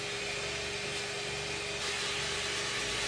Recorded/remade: recorded